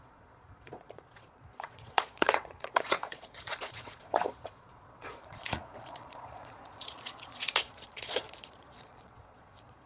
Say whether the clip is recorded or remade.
remade